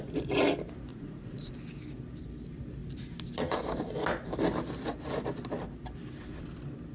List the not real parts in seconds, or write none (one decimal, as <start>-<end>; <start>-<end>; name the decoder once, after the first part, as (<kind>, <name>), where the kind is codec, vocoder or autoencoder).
0.9-1.5 (vocoder, Vocos)